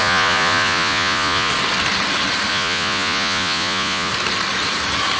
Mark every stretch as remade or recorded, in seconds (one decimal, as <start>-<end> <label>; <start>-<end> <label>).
0.0-1.5 remade; 1.5-2.5 recorded; 2.5-4.1 remade; 4.1-5.2 recorded